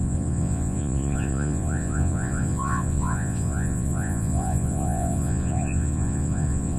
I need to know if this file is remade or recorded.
remade